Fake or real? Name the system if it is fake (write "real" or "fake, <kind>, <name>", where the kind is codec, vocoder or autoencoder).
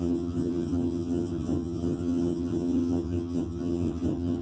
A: fake, vocoder, HiFi-GAN